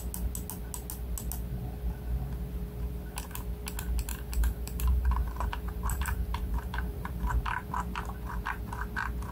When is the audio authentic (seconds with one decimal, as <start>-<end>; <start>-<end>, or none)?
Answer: 0.0-4.1; 7.3-9.3